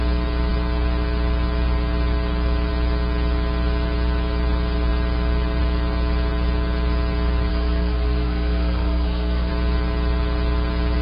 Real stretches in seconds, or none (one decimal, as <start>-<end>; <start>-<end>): 0.0-7.5; 9.5-11.0